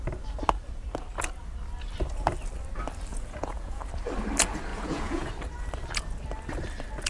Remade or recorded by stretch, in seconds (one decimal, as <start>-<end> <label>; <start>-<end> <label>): 0.0-3.1 recorded; 3.1-3.8 remade; 3.8-4.7 recorded; 4.7-5.3 remade; 5.3-7.1 recorded